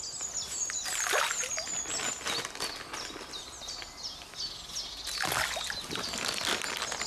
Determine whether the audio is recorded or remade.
recorded